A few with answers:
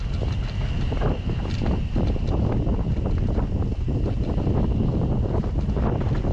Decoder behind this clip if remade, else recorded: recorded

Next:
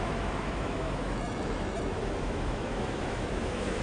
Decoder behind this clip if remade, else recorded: remade, autoencoder, DAC-VAE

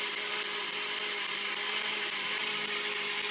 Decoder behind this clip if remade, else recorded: recorded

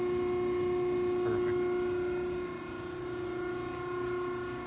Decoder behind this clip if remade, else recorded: recorded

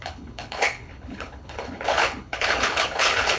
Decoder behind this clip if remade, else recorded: remade, codec, HILCodec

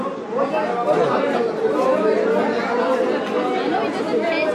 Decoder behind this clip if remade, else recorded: recorded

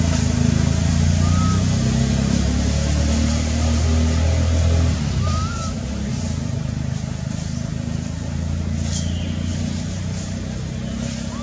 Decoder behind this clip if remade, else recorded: recorded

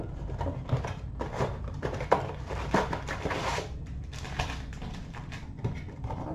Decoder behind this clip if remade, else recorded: remade, vocoder, BigVGAN v2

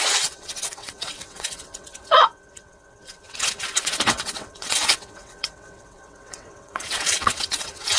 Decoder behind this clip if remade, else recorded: remade, vocoder, WaveNeXt